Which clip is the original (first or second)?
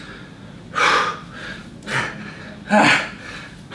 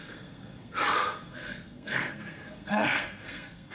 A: first